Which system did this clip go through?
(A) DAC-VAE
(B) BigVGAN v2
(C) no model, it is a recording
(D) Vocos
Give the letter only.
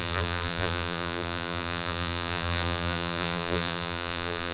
B